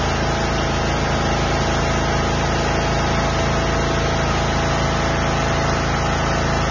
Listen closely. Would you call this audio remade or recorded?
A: recorded